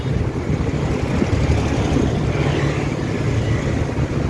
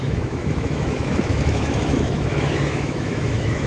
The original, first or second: first